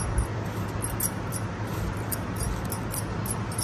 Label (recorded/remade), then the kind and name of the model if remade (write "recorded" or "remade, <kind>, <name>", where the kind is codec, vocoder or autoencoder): recorded